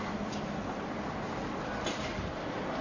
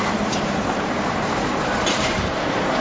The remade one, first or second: second